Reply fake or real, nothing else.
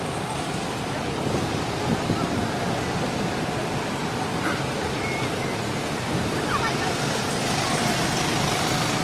real